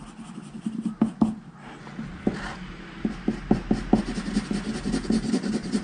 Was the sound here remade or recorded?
recorded